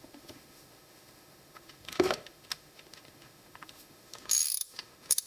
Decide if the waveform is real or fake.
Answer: fake